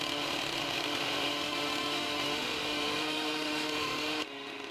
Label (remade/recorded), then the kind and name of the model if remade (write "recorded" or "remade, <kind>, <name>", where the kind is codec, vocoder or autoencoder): remade, autoencoder, DAC-VAE